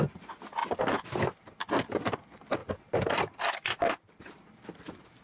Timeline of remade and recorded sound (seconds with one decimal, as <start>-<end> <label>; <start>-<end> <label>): 0.0-5.2 recorded